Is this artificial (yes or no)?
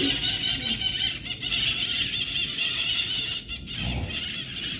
no